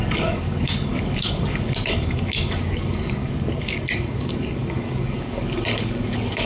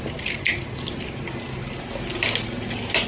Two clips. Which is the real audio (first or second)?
second